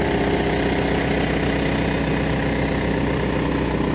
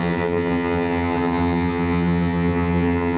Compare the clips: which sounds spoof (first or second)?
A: second